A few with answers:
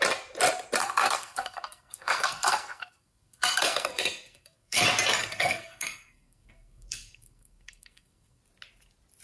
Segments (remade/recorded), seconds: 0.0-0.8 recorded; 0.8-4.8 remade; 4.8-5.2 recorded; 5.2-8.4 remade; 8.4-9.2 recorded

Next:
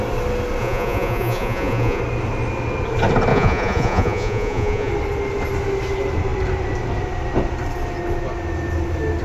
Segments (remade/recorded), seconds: 0.0-0.6 recorded; 0.6-2.0 remade; 2.0-3.3 recorded; 3.3-4.9 remade; 4.9-9.2 recorded

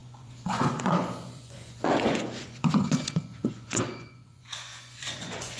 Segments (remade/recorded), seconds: 0.0-5.6 remade